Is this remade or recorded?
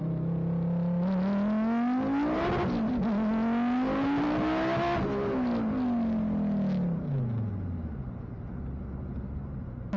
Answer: recorded